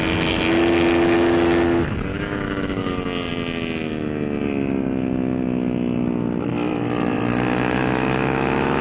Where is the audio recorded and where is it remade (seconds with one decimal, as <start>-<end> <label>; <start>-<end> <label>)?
0.0-2.1 recorded; 2.1-2.9 remade; 2.9-7.3 recorded; 7.3-8.8 remade